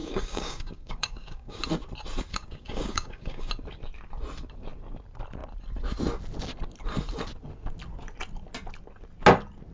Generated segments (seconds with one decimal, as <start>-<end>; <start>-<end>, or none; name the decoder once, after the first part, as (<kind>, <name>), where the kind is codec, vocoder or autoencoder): 0.0-1.6 (codec, DAC); 2.3-3.5